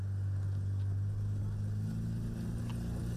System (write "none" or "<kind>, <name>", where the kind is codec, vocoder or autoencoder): none